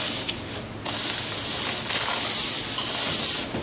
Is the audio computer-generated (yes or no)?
no